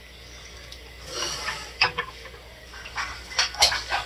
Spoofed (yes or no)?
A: yes